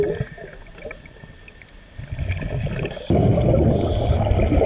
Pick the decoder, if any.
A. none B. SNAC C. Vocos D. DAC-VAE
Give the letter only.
A